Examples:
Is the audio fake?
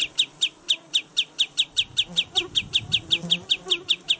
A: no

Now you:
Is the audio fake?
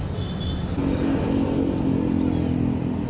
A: no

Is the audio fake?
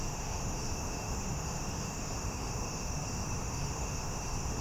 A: yes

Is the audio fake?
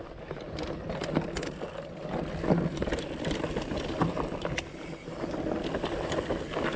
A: no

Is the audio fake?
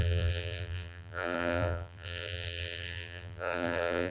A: yes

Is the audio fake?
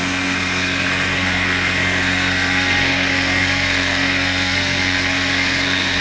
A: yes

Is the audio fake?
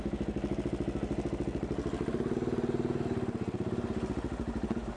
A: no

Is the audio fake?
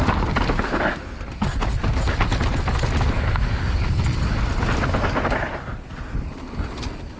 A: no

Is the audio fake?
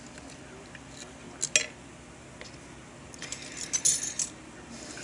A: no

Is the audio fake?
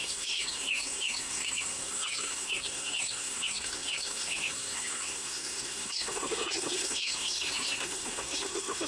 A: yes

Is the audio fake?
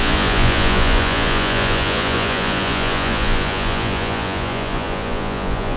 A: yes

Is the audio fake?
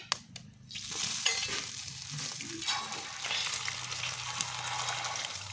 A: no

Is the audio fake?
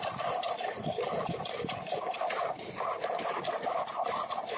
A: no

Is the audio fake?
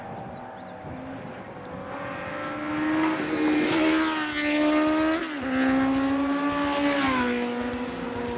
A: no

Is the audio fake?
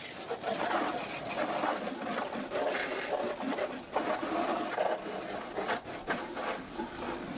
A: no